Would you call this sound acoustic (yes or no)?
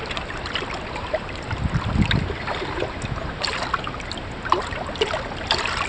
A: yes